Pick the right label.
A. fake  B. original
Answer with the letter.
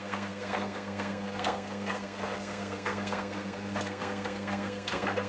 A